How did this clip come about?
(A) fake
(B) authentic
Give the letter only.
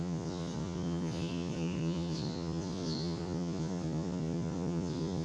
A